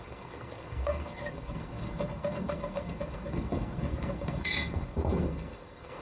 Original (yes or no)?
no